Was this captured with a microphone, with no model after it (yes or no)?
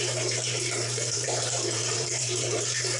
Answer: no